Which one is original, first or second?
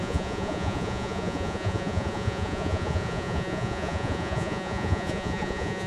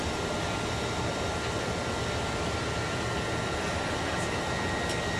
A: second